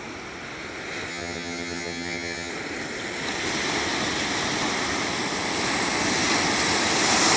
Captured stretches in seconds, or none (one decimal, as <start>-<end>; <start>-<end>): 0.0-1.1; 2.5-7.4